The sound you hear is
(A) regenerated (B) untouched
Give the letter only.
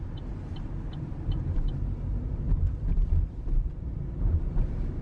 A